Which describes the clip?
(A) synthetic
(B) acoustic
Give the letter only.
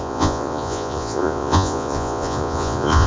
A